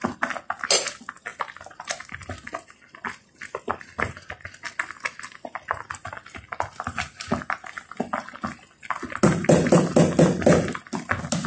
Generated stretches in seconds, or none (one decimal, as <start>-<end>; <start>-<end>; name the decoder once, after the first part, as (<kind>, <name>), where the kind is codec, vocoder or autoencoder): none